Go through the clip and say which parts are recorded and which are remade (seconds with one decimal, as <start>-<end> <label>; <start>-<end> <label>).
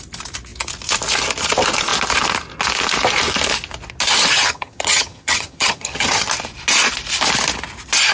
0.0-4.3 recorded; 4.3-6.3 remade; 6.3-8.1 recorded